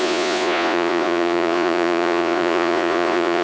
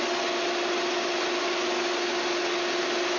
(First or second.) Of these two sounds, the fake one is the first